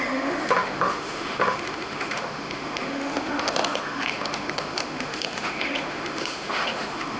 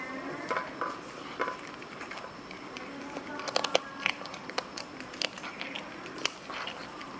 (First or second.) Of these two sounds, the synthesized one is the first